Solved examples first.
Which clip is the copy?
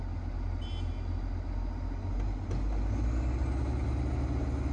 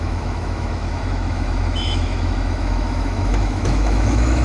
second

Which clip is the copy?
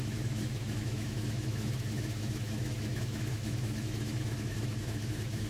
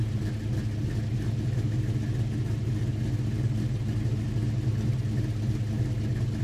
first